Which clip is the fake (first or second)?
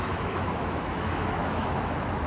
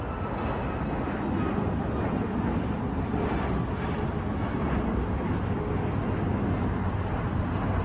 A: first